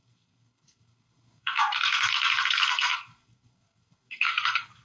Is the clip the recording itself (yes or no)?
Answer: no